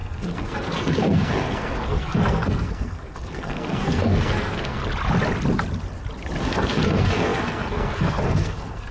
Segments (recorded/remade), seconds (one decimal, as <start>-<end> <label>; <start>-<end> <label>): 0.0-4.8 remade; 4.8-6.4 recorded; 6.4-8.9 remade